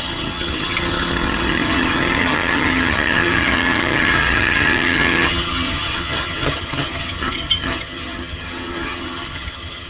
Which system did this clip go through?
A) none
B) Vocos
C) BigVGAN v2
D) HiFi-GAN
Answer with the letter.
D